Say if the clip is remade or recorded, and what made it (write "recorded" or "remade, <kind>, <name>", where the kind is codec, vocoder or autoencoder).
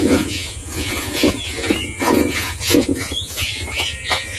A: remade, vocoder, Vocos